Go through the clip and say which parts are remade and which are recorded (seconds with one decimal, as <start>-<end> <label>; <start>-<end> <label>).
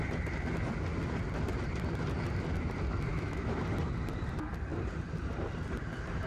0.0-3.1 recorded; 3.1-3.6 remade; 3.6-6.3 recorded